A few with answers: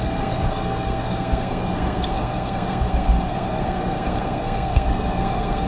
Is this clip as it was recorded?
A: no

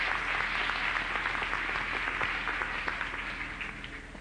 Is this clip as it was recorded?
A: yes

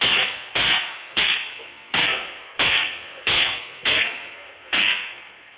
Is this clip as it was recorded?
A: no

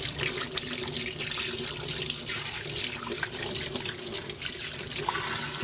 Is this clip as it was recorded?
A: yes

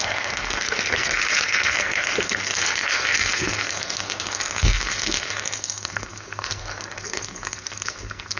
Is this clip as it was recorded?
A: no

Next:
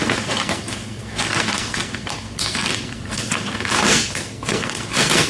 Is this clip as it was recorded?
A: no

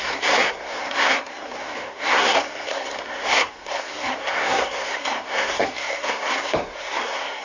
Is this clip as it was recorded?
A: no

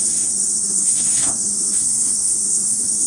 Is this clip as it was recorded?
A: no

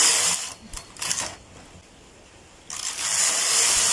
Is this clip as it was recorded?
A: yes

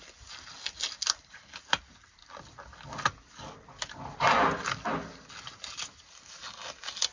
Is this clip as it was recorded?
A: yes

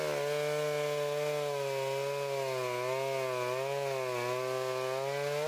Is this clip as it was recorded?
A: yes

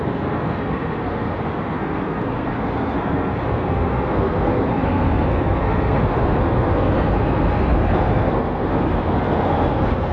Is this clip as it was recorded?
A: no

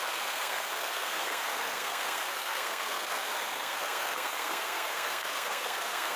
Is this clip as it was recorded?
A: no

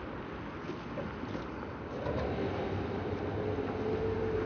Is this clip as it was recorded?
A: yes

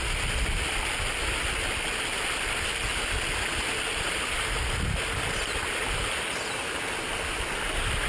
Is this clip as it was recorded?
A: yes